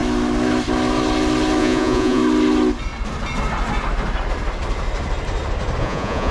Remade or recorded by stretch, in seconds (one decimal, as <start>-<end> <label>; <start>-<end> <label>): 0.0-1.6 recorded; 1.6-2.2 remade; 2.2-5.8 recorded; 5.8-6.3 remade